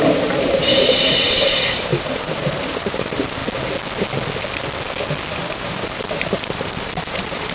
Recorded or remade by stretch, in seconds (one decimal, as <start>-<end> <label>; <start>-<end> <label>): 0.0-3.4 remade; 3.4-5.3 recorded; 5.3-7.5 remade